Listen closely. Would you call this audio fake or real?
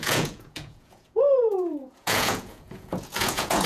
fake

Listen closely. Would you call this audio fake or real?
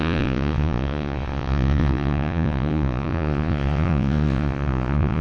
fake